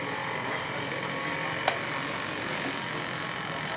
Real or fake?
real